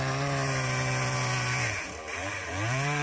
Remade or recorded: remade